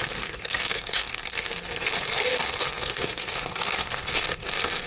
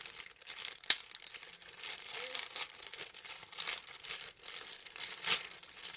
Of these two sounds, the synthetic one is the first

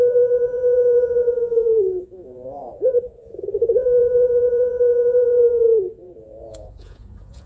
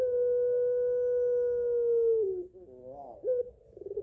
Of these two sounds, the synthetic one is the first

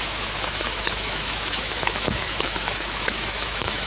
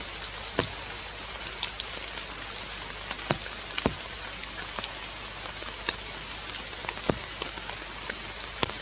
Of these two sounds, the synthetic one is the first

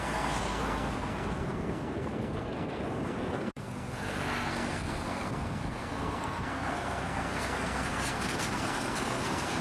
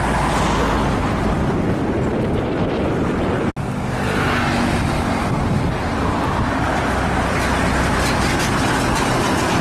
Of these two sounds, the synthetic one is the first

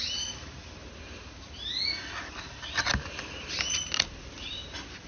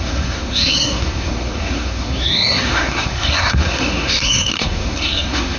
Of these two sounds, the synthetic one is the second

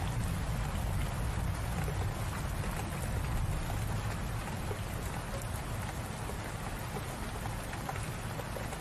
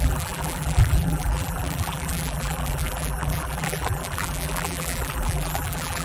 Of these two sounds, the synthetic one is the second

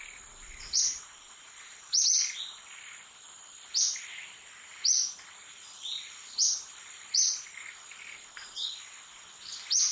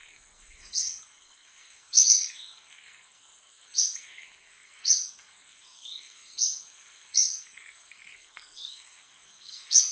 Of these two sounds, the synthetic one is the second